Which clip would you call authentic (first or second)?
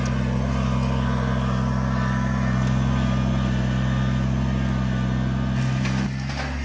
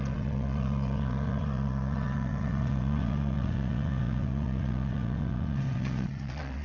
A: first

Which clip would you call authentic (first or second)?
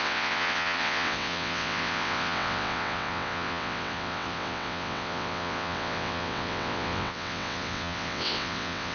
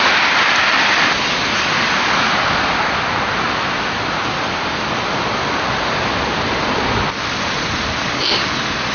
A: second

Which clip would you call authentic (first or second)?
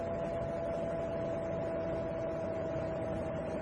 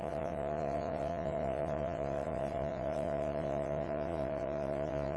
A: first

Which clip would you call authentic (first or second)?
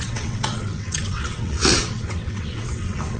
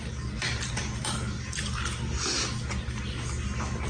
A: second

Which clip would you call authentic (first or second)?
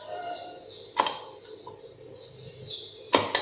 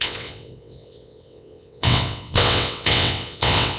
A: first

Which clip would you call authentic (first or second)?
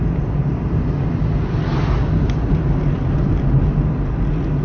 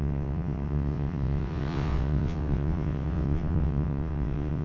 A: first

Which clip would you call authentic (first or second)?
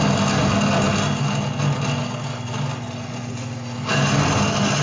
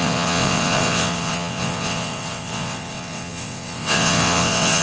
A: first